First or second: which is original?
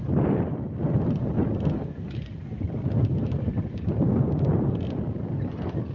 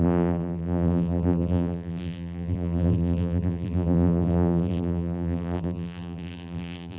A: first